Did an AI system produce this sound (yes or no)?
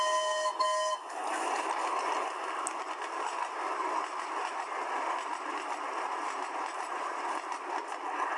no